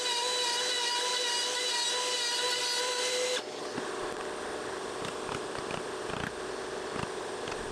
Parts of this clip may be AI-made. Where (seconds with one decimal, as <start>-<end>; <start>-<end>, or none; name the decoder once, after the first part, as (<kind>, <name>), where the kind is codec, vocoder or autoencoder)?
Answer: 0.0-1.1 (vocoder, BigVGAN v2); 2.8-7.7